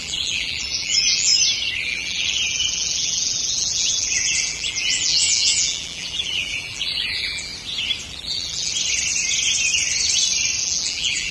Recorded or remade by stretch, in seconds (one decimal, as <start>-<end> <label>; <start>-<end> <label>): 0.0-1.3 remade; 1.3-1.8 recorded; 1.8-7.5 remade; 7.5-8.1 recorded; 8.1-8.7 remade; 8.7-10.6 recorded; 10.6-11.3 remade